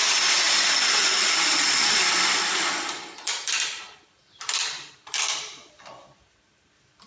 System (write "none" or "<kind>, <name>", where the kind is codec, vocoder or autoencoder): none